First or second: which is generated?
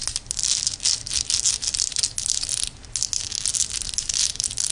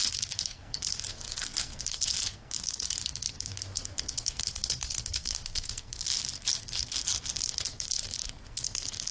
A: second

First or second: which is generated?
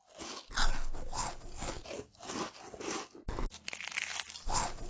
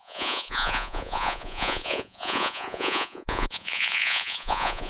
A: second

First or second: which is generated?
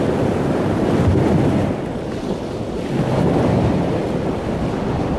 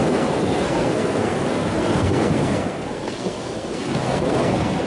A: second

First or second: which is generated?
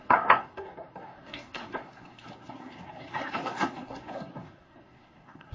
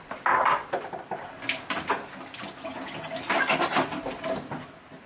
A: first